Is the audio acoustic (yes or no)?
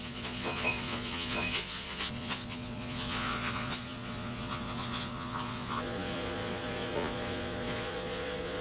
no